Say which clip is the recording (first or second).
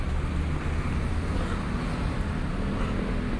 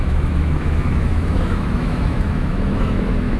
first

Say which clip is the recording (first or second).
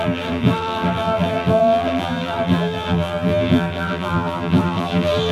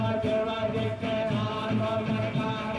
second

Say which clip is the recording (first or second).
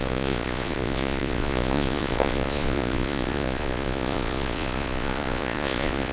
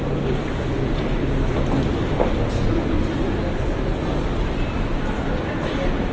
second